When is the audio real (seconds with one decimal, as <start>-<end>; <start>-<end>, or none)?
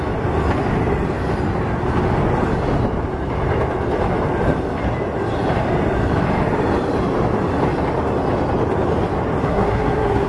0.0-9.4